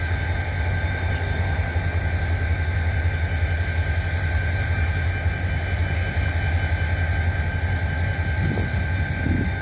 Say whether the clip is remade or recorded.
recorded